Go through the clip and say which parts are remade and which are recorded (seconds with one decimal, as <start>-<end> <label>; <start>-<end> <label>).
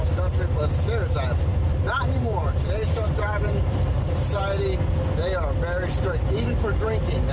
0.0-1.5 recorded; 1.5-4.4 remade; 4.4-7.3 recorded